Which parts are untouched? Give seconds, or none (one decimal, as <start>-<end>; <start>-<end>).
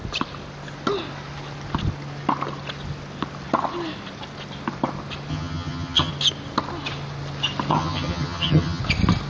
0.0-5.3; 6.1-7.7; 8.8-9.3